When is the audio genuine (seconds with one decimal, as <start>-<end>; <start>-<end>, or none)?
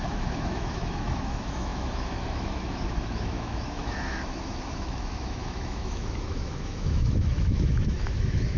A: none